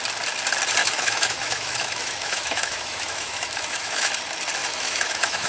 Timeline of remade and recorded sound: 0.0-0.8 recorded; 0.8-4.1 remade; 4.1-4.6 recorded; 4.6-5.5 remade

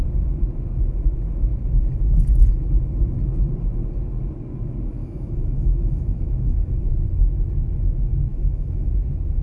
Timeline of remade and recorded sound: 0.0-5.0 recorded; 5.0-6.9 remade; 6.9-8.3 recorded; 8.3-8.9 remade; 8.9-9.4 recorded

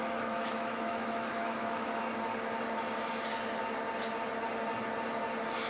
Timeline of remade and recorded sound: 0.0-2.0 remade; 2.0-5.7 recorded

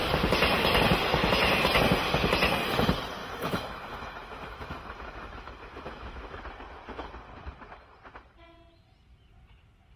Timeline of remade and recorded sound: 0.0-3.2 recorded; 3.2-6.4 remade; 6.4-10.0 recorded

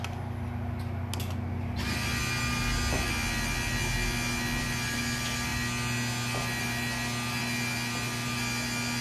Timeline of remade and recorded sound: 0.0-9.0 recorded